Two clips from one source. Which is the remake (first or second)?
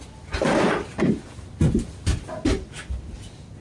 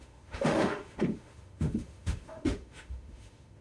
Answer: second